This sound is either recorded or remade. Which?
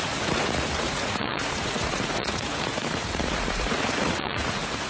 remade